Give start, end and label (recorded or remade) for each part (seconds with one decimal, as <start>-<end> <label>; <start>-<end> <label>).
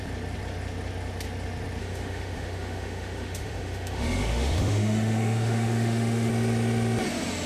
0.0-1.8 recorded; 1.8-6.3 remade; 6.3-7.5 recorded